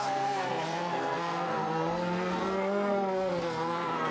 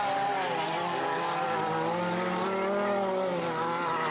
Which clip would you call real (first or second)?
second